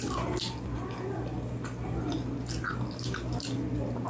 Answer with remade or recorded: recorded